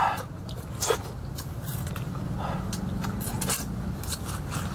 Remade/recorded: recorded